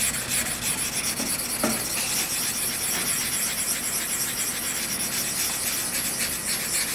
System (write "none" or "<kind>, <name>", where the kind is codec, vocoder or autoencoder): none